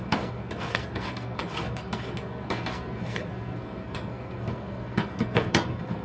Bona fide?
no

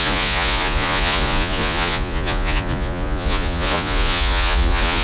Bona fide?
no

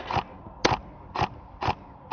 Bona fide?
yes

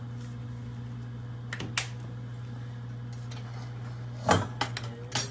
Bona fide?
yes